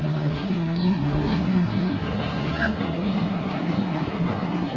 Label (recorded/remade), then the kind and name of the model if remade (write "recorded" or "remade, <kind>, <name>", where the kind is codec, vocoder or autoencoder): remade, codec, SNAC